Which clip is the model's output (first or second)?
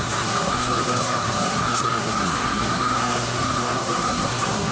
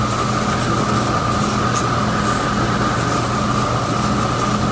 first